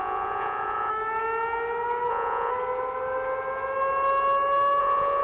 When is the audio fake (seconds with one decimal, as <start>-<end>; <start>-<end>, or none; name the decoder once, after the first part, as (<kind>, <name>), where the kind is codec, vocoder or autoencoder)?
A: 0.0-0.9 (vocoder, Vocos); 2.1-2.5; 4.8-5.2

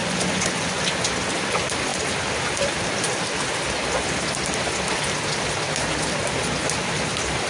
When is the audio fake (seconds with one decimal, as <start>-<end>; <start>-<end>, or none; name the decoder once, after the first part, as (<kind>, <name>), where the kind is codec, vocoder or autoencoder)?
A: 0.0-0.9 (vocoder, Vocos)

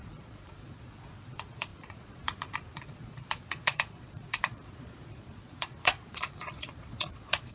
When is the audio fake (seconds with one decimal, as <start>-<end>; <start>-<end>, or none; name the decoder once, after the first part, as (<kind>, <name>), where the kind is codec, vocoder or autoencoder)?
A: 0.0-7.5 (vocoder, Vocos)